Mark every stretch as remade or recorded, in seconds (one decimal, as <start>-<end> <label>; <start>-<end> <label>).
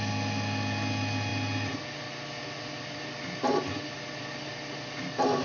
0.0-5.4 recorded